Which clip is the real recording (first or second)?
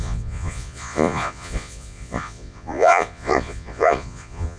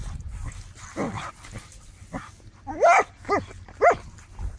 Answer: second